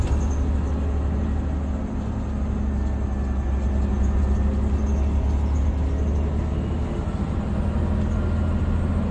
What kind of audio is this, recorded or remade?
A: recorded